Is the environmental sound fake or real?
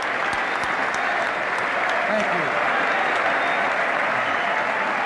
real